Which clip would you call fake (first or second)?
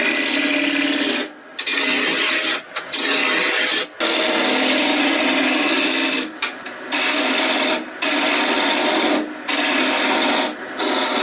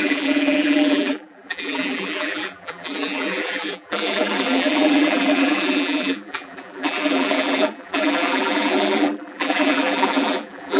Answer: second